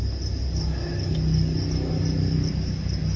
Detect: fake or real real